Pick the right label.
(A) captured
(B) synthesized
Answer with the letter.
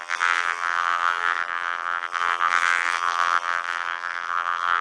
B